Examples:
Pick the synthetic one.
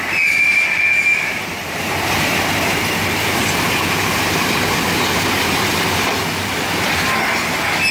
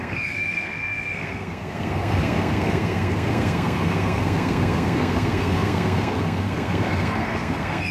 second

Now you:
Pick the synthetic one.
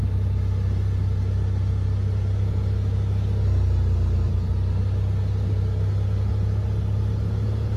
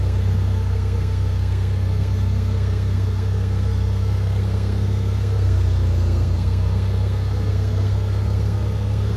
second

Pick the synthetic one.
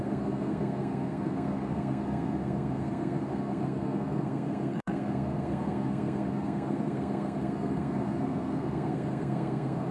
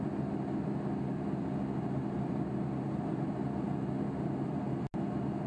first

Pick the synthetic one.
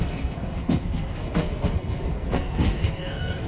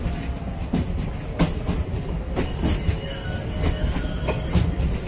first